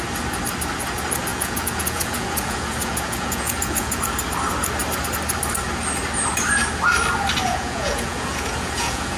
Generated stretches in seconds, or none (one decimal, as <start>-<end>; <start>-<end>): 1.3-4.0; 7.4-9.2